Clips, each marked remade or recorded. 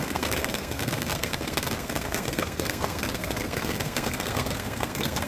remade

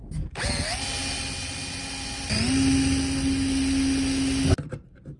recorded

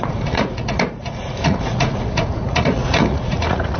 remade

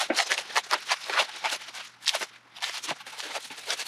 recorded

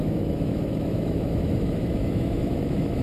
remade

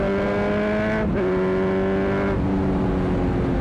recorded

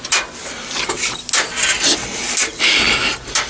recorded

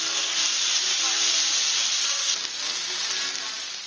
recorded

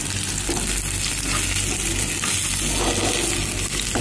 recorded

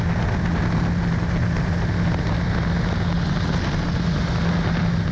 recorded